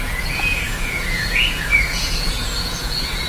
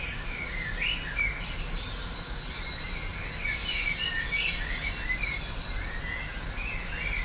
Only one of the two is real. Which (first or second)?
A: second